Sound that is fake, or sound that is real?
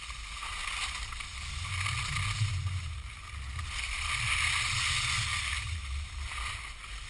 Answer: real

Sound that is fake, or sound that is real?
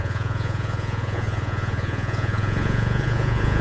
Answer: fake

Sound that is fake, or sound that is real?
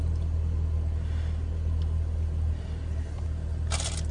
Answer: real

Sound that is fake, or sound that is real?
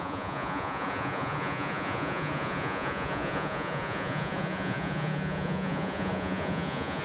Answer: fake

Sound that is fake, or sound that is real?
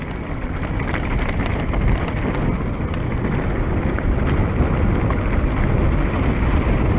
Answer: real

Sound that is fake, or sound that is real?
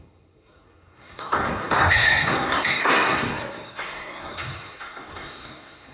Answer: fake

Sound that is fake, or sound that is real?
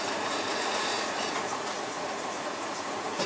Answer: fake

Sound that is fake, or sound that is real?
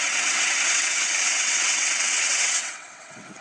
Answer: fake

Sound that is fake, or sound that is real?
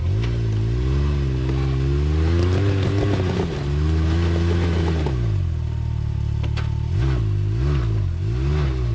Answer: real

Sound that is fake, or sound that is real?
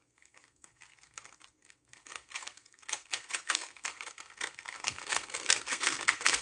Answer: fake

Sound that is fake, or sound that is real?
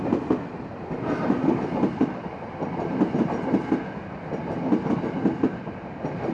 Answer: real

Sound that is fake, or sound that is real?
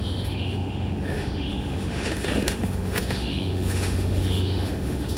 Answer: fake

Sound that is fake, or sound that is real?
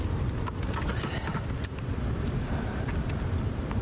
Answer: real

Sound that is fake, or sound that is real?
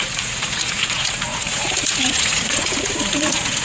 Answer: fake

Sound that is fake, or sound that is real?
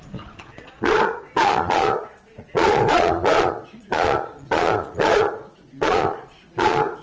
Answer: fake